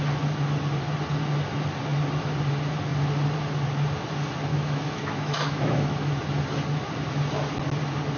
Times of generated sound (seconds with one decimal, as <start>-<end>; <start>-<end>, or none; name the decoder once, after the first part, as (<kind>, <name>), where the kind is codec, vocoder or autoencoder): 4.5-6.2 (autoencoder, DAC-VAE)